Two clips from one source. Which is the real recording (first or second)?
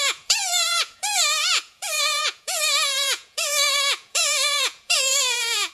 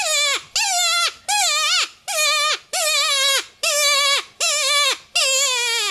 second